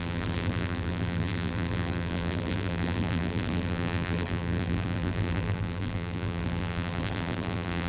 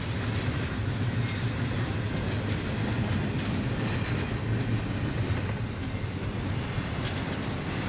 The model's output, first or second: first